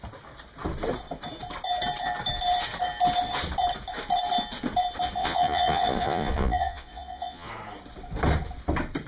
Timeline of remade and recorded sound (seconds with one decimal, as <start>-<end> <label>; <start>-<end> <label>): 0.0-5.2 recorded; 5.2-7.5 remade; 7.5-9.1 recorded